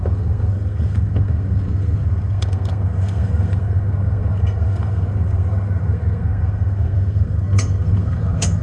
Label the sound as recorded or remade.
remade